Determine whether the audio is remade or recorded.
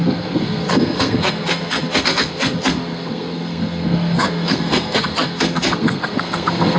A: remade